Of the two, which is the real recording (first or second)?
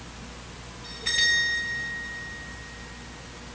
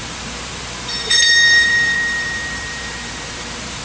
first